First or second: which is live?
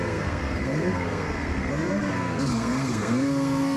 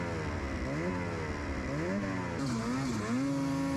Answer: second